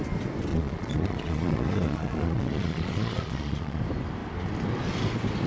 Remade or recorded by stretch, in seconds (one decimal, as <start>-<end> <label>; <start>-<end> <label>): 0.0-0.5 recorded; 0.5-3.8 remade; 3.8-5.5 recorded